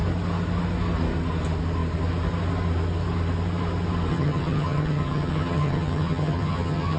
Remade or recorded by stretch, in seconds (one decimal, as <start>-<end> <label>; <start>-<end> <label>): 0.0-4.1 recorded; 4.1-7.0 remade

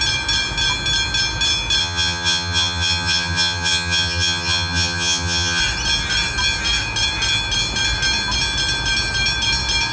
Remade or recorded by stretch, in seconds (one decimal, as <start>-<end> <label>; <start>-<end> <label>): 0.0-1.8 recorded; 1.8-5.6 remade; 5.6-9.9 recorded